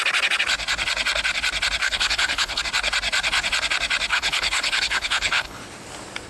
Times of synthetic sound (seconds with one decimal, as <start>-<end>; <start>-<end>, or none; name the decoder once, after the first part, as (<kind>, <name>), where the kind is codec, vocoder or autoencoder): 1.8-2.6 (codec, HILCodec); 4.1-5.6